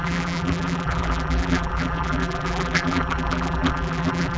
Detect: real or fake fake